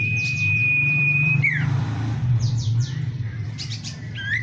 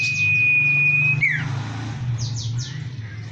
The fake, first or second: first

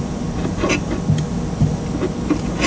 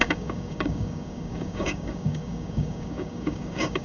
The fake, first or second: second